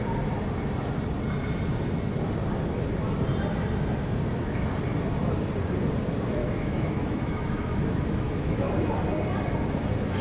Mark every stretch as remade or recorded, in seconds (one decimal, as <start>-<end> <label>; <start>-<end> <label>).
0.0-6.4 recorded; 6.4-8.7 remade; 8.7-10.2 recorded